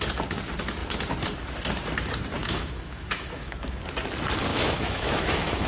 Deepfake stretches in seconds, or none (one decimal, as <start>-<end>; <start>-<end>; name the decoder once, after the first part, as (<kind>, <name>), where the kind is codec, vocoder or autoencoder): 2.4-3.8 (autoencoder, DAC-VAE); 4.5-5.7